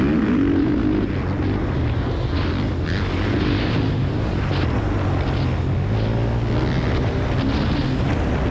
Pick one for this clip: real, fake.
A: real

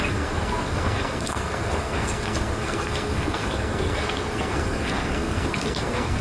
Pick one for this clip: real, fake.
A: fake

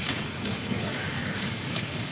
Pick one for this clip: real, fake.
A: fake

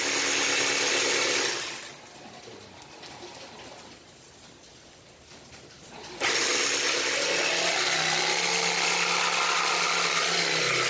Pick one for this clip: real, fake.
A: real